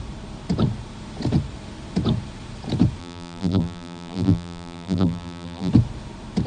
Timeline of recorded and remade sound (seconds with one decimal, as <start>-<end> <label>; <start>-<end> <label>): 0.0-3.0 recorded; 3.0-5.7 remade; 5.7-6.5 recorded